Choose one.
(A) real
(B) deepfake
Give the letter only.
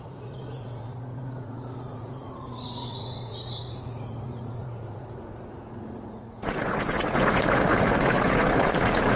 B